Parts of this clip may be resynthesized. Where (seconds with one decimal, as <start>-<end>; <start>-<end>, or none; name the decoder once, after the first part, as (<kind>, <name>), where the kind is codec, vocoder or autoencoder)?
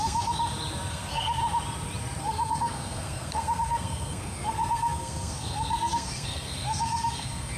0.0-0.4 (codec, SNAC); 0.9-1.4; 2.2-7.6